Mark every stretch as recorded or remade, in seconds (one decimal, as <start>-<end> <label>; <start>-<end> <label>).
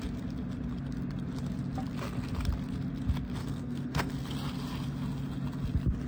0.0-3.4 recorded; 3.4-4.1 remade; 4.1-6.1 recorded